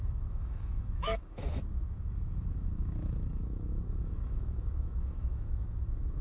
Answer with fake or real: fake